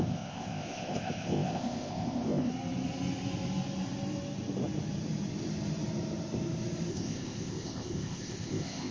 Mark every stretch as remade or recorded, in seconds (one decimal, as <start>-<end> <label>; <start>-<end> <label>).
0.0-2.5 remade; 2.5-6.9 recorded; 6.9-8.9 remade